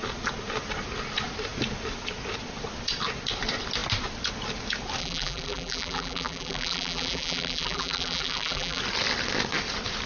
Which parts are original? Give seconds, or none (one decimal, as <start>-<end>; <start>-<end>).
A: 0.0-5.0; 8.8-10.1